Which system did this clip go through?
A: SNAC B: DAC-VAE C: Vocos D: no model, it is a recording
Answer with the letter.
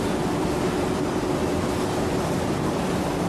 D